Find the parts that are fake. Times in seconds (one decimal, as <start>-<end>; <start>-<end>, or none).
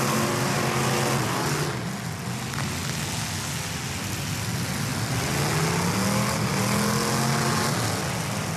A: none